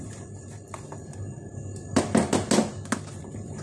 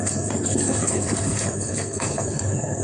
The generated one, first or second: second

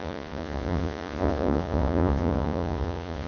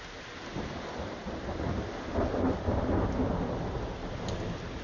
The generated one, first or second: first